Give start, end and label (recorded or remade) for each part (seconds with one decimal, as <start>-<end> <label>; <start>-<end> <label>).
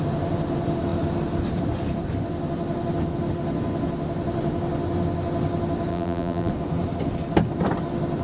0.0-5.9 recorded; 5.9-6.5 remade; 6.5-8.2 recorded